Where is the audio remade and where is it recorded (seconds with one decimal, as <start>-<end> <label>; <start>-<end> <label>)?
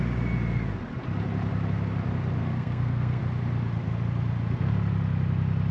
0.0-2.4 recorded; 2.4-3.2 remade; 3.2-5.7 recorded